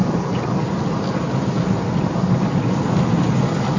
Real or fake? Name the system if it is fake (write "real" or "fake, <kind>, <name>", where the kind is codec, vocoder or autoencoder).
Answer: real